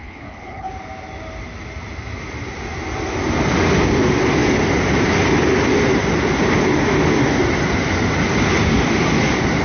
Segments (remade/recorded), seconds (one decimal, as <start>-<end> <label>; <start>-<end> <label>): 0.0-0.7 remade; 0.7-9.6 recorded